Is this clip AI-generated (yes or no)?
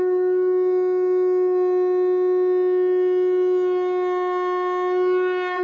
no